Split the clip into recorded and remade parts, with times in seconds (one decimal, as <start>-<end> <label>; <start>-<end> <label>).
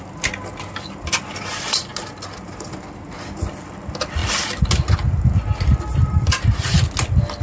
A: 0.0-7.4 recorded